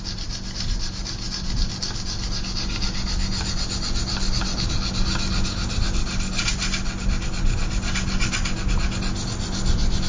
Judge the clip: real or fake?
real